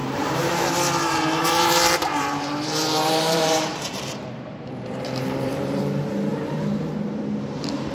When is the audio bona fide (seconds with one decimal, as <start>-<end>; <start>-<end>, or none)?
0.5-1.4; 5.8-6.3; 7.2-7.9